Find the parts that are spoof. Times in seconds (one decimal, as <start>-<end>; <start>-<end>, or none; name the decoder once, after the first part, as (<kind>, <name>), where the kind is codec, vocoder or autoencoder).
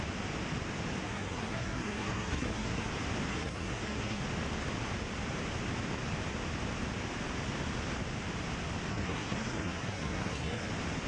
1.0-2.9 (codec, SNAC); 3.3-4.2; 8.9-10.7